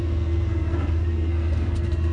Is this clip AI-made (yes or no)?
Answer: yes